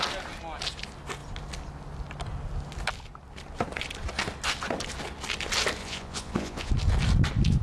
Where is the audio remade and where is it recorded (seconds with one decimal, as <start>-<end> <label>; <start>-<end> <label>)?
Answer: 0.0-5.8 recorded; 5.8-6.7 remade; 6.7-7.6 recorded